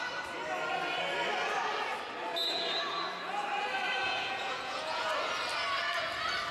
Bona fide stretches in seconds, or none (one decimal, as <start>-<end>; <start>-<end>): 0.0-4.0; 5.1-6.5